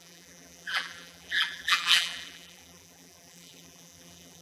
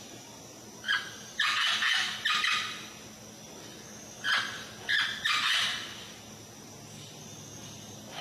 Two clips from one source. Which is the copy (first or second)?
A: first